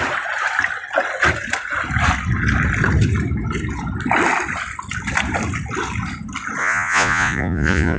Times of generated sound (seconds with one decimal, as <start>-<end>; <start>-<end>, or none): 6.6-8.0